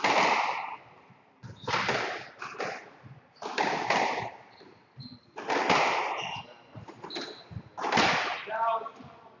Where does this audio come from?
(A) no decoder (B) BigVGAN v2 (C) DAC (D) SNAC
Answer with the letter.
A